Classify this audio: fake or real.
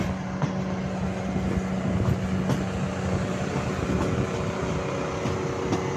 real